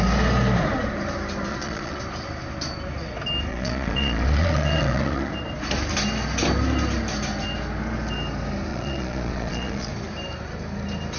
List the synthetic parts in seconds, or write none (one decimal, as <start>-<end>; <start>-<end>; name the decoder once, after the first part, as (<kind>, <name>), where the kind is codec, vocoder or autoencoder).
1.5-2.0 (vocoder, Vocos); 3.5-5.3; 8.7-9.9